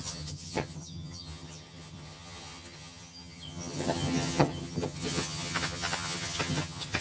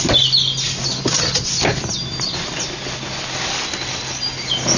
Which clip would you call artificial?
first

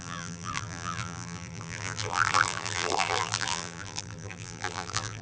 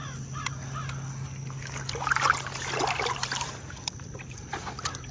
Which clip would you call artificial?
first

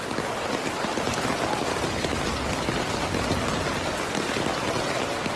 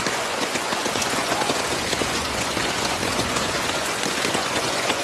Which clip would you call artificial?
second